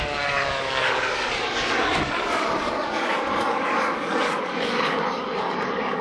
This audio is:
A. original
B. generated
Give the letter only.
B